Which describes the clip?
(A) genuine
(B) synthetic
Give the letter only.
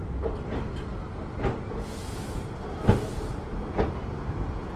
A